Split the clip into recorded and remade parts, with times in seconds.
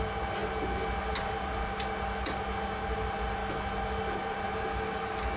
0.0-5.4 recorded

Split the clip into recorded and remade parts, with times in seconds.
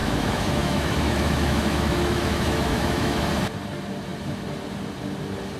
0.0-3.3 remade; 3.3-5.6 recorded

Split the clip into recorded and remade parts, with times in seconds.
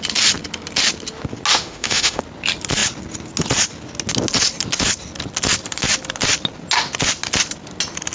0.0-1.5 recorded; 1.5-2.2 remade; 2.2-8.1 recorded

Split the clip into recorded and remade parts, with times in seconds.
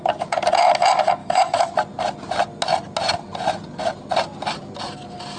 0.0-1.2 recorded; 1.2-1.7 remade; 1.7-5.4 recorded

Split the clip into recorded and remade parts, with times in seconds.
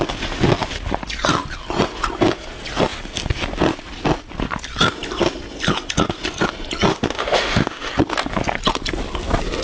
0.0-6.9 recorded; 6.9-7.9 remade; 7.9-9.6 recorded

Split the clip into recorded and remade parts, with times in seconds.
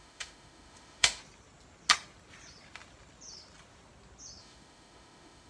0.0-1.2 remade; 1.2-4.4 recorded; 4.4-5.5 remade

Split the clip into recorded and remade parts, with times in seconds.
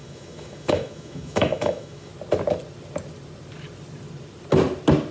0.0-2.1 remade; 2.1-5.1 recorded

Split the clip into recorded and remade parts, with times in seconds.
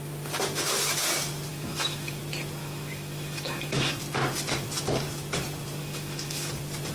0.0-1.5 recorded; 1.5-2.2 remade; 2.2-2.6 recorded; 2.6-4.0 remade; 4.0-5.8 recorded; 5.8-6.5 remade; 6.5-6.9 recorded